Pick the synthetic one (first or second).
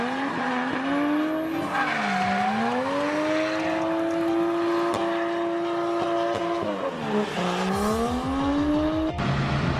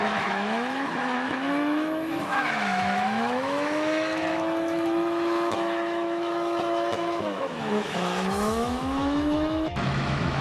second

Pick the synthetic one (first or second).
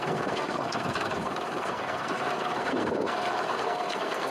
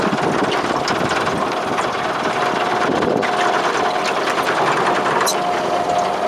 first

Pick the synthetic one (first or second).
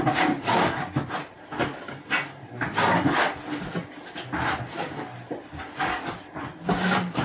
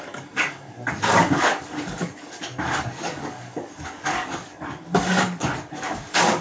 second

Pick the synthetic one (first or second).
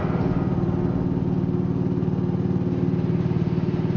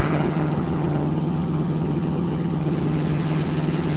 second